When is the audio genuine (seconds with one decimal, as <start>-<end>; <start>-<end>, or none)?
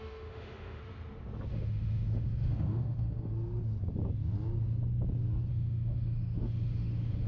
0.8-1.5; 3.3-5.5